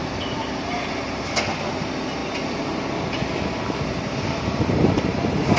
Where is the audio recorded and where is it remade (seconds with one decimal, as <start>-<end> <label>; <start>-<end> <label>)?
0.0-0.6 recorded; 0.6-2.2 remade; 2.2-2.7 recorded; 2.7-5.6 remade